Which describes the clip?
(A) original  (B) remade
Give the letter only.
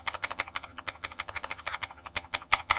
B